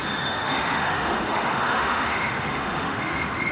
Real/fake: fake